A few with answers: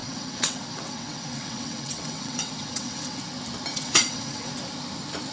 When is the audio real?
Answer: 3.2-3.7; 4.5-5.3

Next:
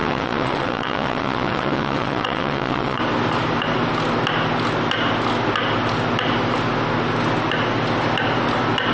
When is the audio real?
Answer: 3.0-8.9